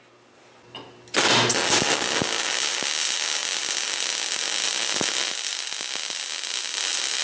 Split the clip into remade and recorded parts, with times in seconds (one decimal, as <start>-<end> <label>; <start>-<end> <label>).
0.0-7.2 recorded